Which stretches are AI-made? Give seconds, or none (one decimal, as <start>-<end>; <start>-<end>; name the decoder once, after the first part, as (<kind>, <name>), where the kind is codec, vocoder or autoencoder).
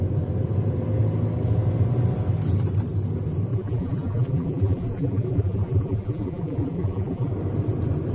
3.5-7.3 (vocoder, BigVGAN v2)